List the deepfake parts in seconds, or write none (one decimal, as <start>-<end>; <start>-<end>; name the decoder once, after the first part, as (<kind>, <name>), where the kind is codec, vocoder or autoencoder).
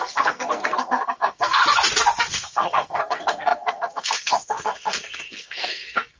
0.0-1.6 (codec, SNAC); 2.3-6.2